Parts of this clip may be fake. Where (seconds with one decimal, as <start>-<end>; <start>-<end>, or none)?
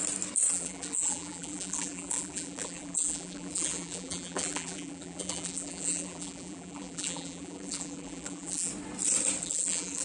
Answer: 0.5-8.7; 9.4-10.0